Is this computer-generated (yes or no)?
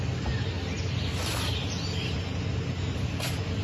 no